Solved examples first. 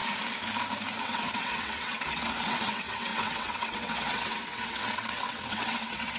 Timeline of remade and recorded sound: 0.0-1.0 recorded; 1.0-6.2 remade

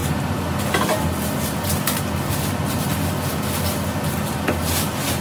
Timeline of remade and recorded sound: 0.0-5.2 recorded

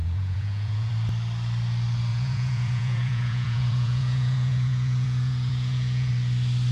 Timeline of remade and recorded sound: 0.0-0.9 remade; 0.9-2.1 recorded; 2.1-6.1 remade; 6.1-6.7 recorded